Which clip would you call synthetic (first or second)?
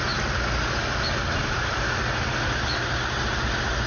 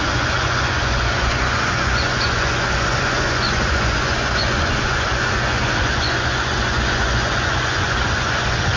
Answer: second